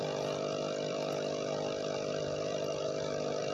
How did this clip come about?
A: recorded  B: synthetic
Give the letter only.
B